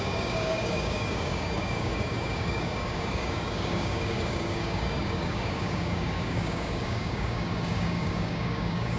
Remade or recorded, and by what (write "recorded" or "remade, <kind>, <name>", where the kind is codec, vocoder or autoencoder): remade, codec, DAC